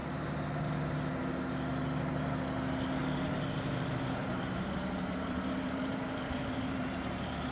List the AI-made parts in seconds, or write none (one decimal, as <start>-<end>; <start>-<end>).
3.0-7.1